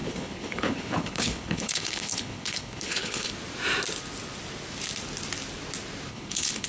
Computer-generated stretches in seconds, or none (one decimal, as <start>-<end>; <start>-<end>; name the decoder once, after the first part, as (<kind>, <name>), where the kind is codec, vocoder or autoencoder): 0.0-3.3 (codec, HILCodec); 6.1-6.7